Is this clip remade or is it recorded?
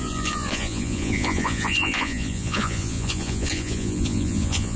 remade